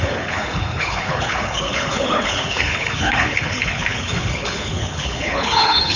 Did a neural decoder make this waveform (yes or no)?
yes